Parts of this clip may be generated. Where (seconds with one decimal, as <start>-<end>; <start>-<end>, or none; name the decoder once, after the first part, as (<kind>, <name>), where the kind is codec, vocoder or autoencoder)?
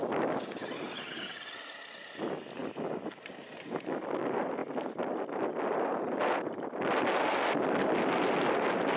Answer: none